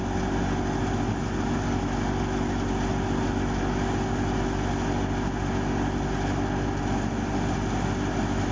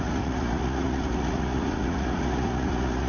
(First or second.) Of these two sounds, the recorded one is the first